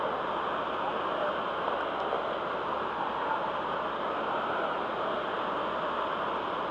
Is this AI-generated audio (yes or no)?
no